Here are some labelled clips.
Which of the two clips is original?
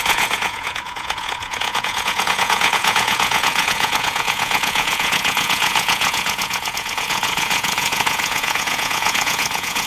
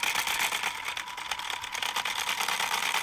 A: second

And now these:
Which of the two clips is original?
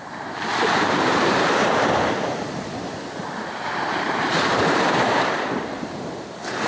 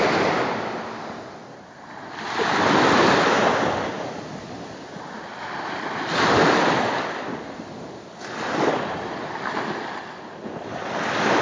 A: second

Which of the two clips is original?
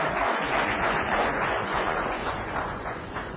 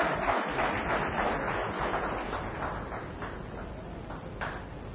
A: second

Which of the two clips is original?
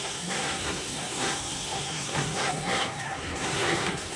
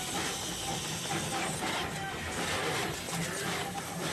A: second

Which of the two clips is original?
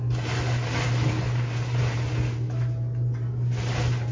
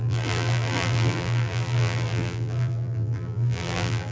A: first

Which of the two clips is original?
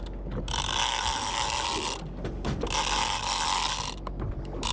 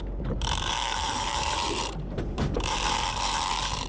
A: first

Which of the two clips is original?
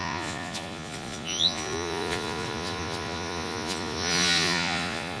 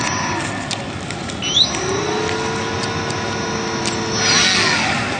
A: second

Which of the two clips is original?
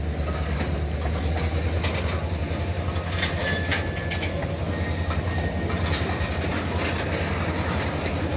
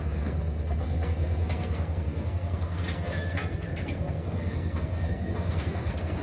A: first